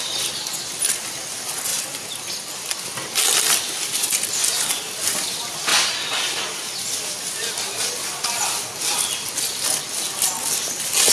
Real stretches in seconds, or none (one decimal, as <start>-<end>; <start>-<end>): 0.0-11.1